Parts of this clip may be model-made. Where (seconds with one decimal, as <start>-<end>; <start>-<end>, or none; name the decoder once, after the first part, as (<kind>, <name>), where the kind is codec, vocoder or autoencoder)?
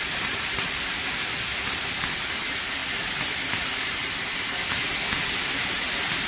none